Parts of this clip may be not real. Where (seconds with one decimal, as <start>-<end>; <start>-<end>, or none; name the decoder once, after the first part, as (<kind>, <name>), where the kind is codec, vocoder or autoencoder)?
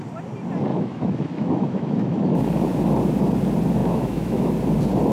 0.7-2.4 (autoencoder, DAC-VAE); 3.8-4.5